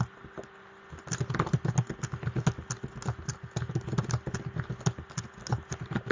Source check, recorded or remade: recorded